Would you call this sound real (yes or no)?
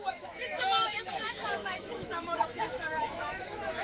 no